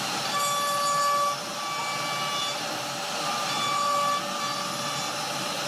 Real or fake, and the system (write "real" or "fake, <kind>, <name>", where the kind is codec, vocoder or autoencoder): real